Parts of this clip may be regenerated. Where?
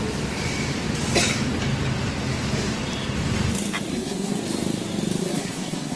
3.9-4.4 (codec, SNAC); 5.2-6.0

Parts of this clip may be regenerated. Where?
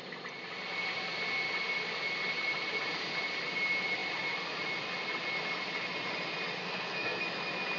6.6-7.2 (codec, SNAC)